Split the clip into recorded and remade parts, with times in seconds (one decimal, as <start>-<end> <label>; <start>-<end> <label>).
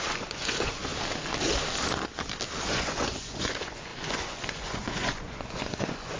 0.0-0.9 remade; 0.9-2.7 recorded; 2.7-6.2 remade